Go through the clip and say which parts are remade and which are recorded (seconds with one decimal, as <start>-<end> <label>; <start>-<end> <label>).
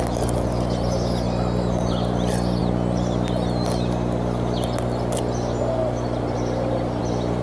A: 0.0-7.4 recorded